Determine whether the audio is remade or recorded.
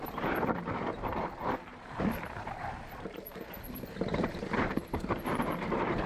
remade